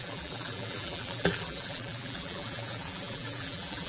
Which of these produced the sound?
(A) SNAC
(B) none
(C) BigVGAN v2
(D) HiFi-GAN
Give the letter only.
C